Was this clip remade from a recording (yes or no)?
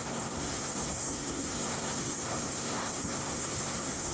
yes